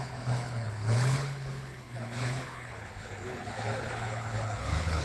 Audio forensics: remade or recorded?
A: remade